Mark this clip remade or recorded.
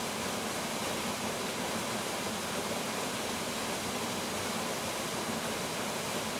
recorded